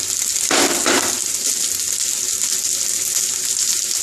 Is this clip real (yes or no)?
yes